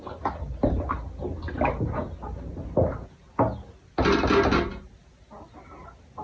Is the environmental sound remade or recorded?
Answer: recorded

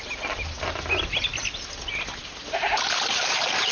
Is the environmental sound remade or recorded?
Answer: recorded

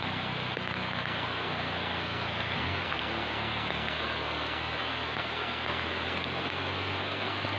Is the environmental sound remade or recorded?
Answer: remade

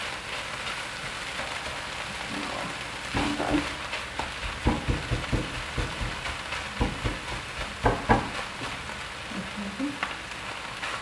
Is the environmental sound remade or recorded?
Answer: recorded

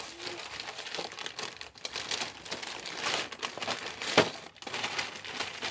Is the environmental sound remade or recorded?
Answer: recorded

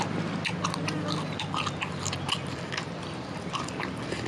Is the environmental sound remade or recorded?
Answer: recorded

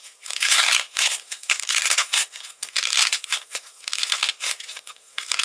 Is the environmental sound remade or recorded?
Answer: remade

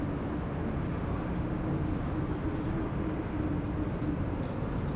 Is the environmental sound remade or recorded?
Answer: recorded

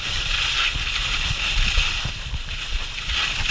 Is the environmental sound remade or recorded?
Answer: recorded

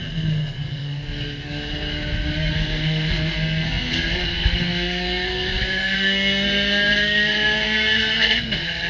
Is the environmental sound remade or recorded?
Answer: remade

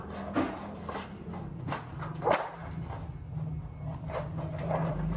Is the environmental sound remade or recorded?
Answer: recorded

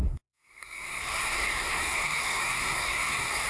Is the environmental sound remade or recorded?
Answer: remade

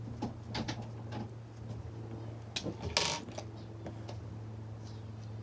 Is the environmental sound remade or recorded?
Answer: recorded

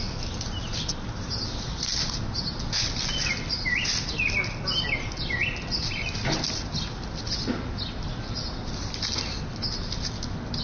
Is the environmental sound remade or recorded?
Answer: recorded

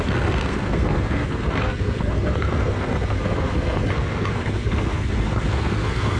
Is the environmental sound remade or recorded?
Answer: remade